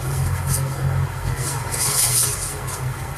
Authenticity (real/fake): fake